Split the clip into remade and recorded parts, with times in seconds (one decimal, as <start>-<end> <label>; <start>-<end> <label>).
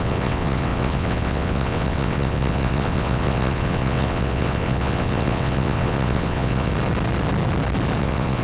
0.0-6.7 remade; 6.7-8.0 recorded; 8.0-8.4 remade